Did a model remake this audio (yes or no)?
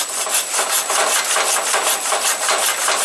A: no